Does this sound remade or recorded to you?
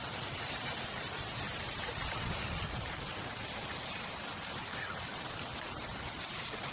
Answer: remade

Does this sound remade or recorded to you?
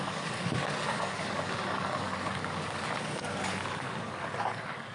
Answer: remade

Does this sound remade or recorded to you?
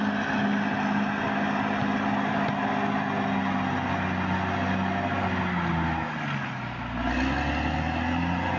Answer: recorded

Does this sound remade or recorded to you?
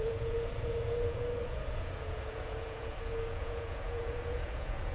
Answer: remade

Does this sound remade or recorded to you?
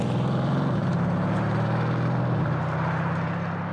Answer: remade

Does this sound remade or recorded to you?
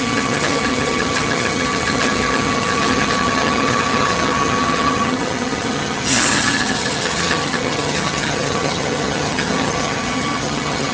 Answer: remade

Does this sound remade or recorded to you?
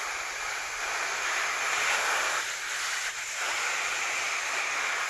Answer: remade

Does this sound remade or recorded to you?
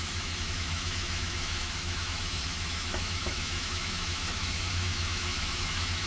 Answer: remade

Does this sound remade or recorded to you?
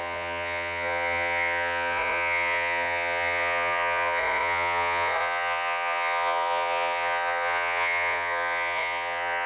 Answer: remade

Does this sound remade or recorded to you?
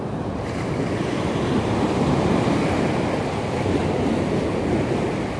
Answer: recorded